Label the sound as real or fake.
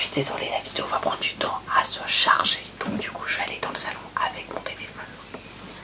real